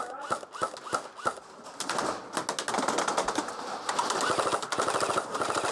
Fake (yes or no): no